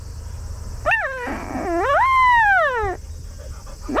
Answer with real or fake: real